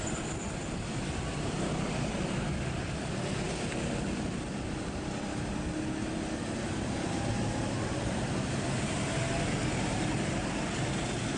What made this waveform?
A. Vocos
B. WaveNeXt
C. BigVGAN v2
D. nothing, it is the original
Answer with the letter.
D